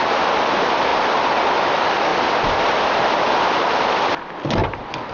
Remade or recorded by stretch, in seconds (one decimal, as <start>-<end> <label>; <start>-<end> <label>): 0.0-0.9 recorded; 0.9-1.7 remade; 1.7-2.1 recorded; 2.1-3.5 remade; 3.5-4.6 recorded; 4.6-5.1 remade